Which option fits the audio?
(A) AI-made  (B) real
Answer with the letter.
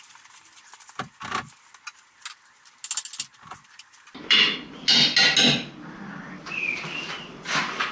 B